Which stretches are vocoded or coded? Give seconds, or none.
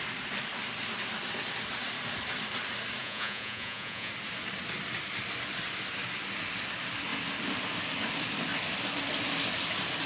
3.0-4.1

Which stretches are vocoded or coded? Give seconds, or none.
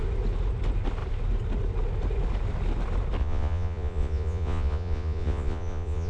3.2-6.1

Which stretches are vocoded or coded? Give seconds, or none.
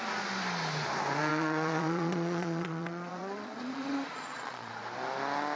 1.3-4.7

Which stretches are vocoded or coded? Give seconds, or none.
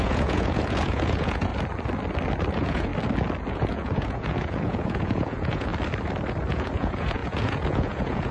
0.0-1.5; 2.5-2.9; 3.5-5.7; 6.5-8.3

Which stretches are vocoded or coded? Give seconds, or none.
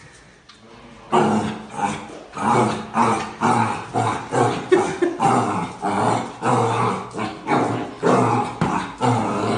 none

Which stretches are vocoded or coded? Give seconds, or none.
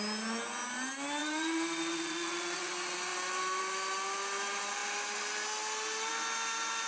1.2-2.7